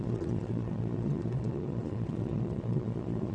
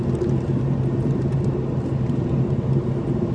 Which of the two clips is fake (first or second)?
first